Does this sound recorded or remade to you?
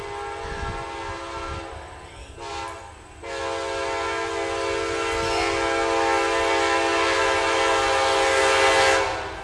recorded